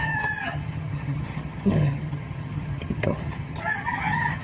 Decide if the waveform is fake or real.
fake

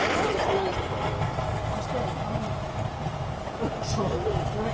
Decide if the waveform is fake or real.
real